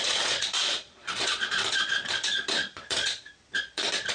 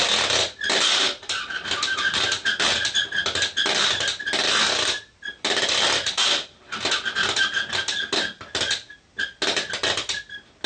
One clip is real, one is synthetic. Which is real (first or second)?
second